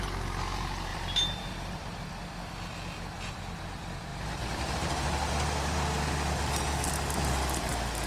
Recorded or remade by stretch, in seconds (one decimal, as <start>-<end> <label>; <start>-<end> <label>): 0.0-0.9 recorded; 0.9-2.1 remade; 2.1-4.1 recorded; 4.1-6.1 remade; 6.1-8.1 recorded